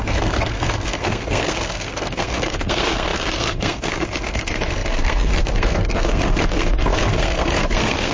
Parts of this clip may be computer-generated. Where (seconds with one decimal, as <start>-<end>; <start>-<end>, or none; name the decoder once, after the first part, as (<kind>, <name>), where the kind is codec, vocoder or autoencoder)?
0.0-8.1 (codec, SNAC)